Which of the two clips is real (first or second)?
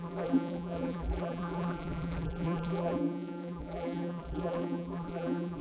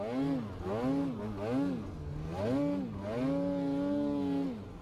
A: second